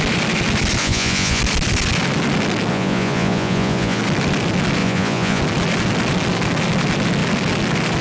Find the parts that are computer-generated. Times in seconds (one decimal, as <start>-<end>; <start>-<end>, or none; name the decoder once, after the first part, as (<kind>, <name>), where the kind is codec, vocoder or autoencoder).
0.8-1.4 (vocoder, Vocos); 2.7-4.0; 4.8-5.4